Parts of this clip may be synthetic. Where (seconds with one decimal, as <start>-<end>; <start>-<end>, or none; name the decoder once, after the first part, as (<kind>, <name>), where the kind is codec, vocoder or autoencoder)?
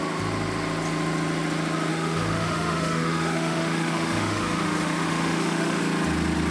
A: 1.9-5.8 (autoencoder, DAC-VAE)